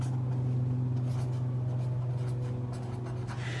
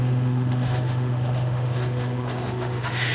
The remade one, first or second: second